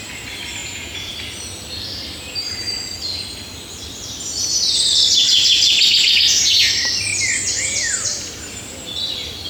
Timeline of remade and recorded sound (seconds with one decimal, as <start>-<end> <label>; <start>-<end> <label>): 0.0-0.6 recorded; 0.6-1.1 remade; 1.1-9.5 recorded